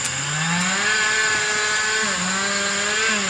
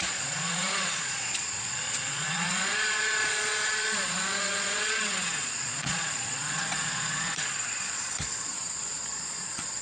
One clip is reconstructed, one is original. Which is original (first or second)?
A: first